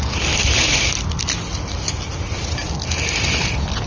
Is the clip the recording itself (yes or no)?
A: yes